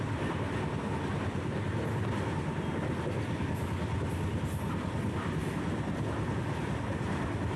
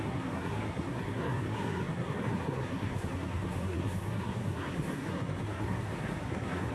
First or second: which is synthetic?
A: second